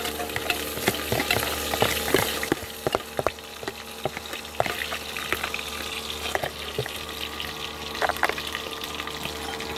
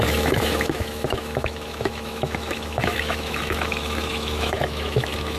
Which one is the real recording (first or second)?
first